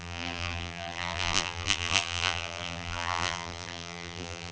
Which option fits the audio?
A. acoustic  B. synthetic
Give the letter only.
B